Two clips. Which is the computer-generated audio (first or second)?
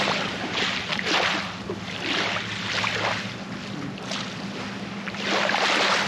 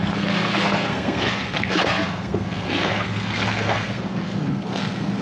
second